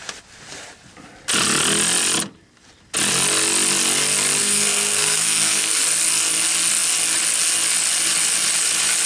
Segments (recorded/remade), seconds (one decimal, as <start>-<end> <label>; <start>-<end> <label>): 0.0-4.4 recorded; 4.4-5.8 remade; 5.8-9.1 recorded